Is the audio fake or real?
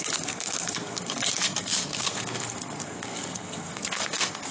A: fake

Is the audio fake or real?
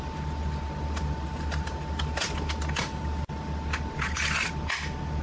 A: real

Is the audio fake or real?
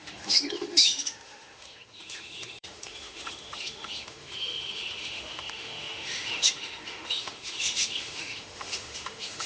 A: fake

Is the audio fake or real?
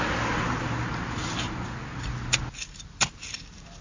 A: real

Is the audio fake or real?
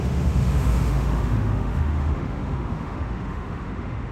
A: fake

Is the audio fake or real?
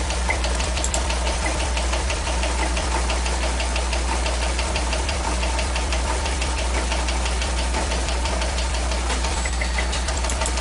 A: fake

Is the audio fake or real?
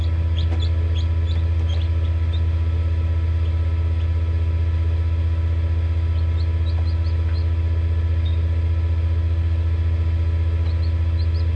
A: real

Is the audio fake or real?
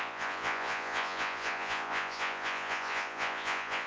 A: fake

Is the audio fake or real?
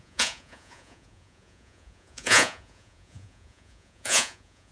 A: fake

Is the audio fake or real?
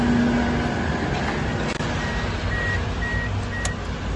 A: real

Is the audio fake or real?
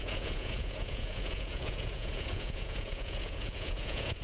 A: fake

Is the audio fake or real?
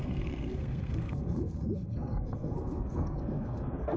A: fake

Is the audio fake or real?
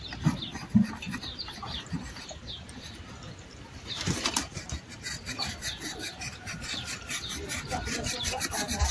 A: fake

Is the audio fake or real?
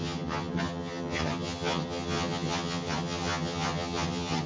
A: fake